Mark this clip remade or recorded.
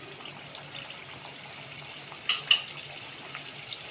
recorded